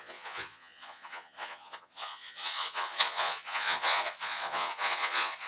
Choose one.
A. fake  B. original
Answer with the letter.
A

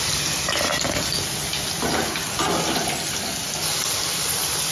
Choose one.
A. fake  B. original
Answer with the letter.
B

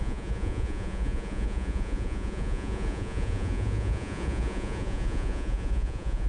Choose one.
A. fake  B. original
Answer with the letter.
A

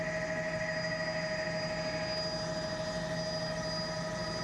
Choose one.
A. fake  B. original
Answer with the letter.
B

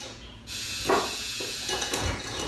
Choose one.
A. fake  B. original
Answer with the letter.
A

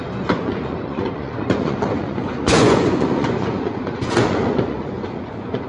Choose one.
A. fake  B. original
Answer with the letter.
A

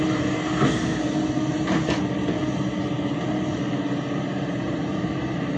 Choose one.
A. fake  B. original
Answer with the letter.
B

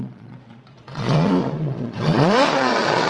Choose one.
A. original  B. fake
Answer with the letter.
B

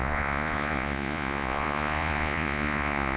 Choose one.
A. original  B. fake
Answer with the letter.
B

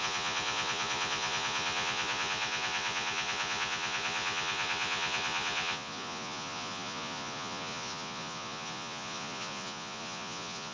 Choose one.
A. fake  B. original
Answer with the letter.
A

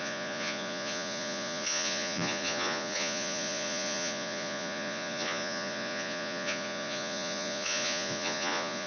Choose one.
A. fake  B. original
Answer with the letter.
A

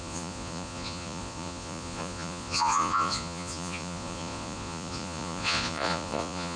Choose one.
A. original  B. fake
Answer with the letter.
B